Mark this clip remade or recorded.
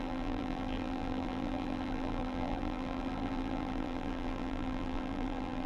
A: remade